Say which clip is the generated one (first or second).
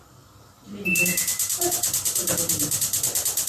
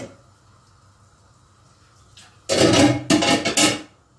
first